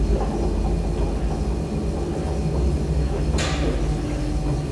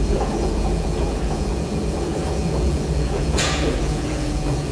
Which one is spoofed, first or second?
second